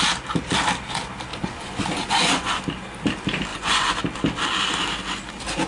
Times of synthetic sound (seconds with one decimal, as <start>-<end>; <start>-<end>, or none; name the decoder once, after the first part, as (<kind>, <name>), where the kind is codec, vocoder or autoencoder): 1.3-2.6 (vocoder, Vocos); 3.5-4.0